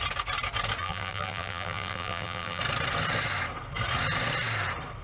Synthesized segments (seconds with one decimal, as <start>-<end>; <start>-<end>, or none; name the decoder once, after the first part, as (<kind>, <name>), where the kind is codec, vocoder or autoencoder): 0.8-2.6 (vocoder, BigVGAN v2)